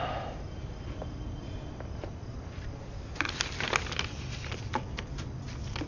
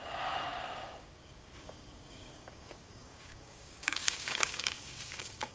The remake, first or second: second